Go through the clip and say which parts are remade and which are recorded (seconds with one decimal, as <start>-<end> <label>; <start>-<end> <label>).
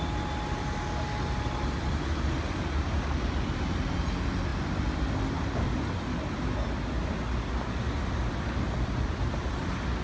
0.0-10.0 recorded